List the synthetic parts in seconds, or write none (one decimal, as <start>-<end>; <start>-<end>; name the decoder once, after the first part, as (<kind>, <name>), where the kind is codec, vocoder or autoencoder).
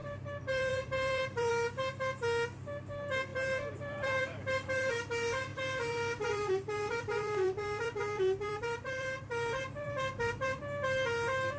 0.0-1.5 (vocoder, BigVGAN v2); 3.3-4.9; 5.5-10.6